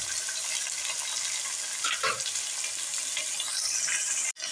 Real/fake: real